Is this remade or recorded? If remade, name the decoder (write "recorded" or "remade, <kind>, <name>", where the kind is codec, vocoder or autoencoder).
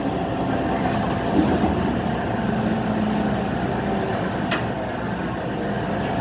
recorded